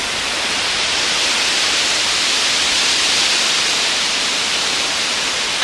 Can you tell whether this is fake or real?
real